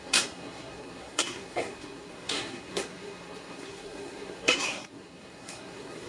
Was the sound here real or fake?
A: fake